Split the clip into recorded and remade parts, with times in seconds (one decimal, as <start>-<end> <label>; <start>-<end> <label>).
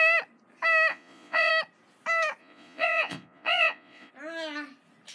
0.0-0.9 recorded; 0.9-1.5 remade; 1.5-2.4 recorded; 2.4-4.1 remade; 4.1-5.1 recorded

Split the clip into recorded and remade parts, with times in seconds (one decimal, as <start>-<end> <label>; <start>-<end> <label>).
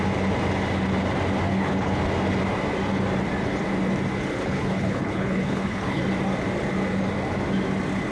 0.0-1.5 recorded; 1.5-2.0 remade; 2.0-4.4 recorded; 4.4-6.0 remade; 6.0-8.1 recorded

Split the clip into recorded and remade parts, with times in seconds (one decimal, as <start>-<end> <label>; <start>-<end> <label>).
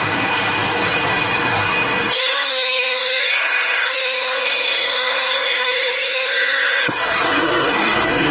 0.0-8.3 remade